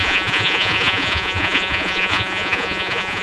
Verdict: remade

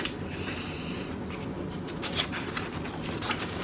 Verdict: recorded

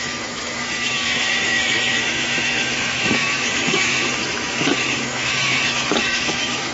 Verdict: remade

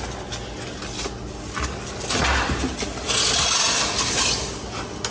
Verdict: recorded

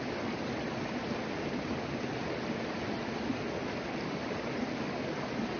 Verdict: recorded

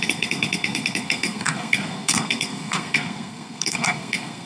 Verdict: remade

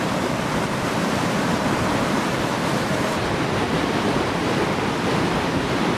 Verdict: remade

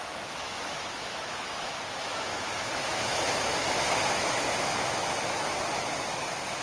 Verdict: remade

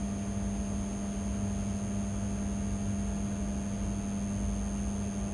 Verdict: recorded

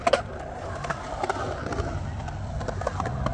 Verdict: recorded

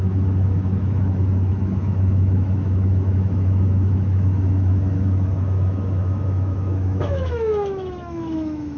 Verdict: remade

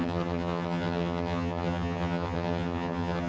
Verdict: remade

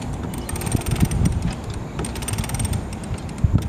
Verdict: recorded